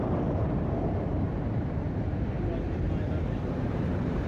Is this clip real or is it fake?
fake